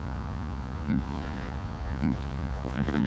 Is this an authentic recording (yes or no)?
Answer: no